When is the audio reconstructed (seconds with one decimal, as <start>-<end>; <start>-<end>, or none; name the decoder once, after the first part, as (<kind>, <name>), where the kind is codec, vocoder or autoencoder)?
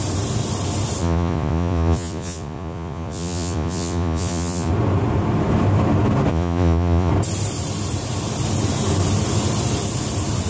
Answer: 1.0-4.7 (vocoder, Vocos); 6.3-7.1